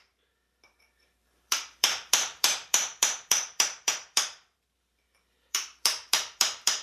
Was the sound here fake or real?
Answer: fake